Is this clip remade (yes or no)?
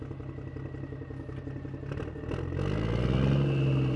no